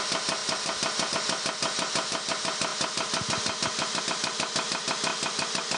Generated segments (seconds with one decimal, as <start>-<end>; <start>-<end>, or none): 0.4-1.1; 5.1-5.8